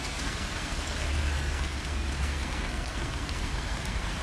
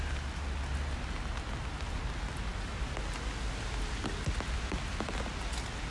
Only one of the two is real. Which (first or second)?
second